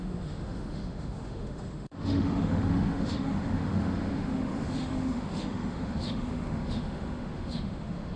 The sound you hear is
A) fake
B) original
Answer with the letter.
A